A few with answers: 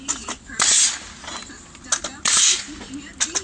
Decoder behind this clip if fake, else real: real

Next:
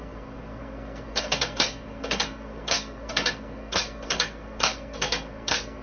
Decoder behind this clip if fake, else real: fake, codec, SNAC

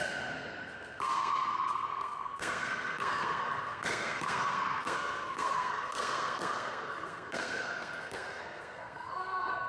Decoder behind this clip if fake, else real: fake, codec, SNAC